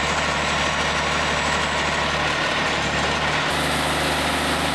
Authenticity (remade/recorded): recorded